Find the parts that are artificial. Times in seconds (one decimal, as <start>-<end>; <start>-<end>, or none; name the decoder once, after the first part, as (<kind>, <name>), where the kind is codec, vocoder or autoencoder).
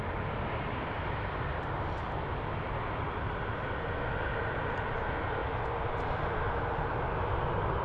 none